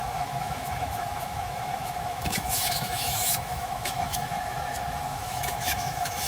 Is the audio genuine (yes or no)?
no